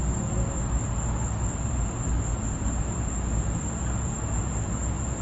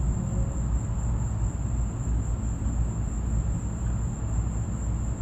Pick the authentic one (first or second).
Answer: second